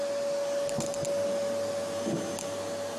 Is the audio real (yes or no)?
yes